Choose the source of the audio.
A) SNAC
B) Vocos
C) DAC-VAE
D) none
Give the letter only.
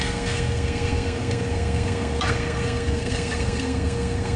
A